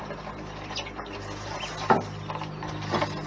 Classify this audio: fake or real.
real